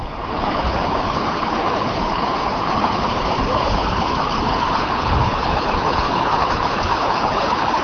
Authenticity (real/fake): fake